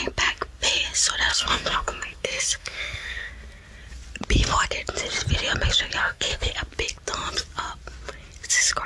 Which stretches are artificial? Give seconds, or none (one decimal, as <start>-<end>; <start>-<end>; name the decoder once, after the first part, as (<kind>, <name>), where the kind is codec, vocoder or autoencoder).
1.3-3.3 (codec, SNAC); 6.0-6.5